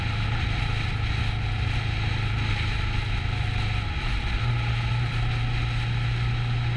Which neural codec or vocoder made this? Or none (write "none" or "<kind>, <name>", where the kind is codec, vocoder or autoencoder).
none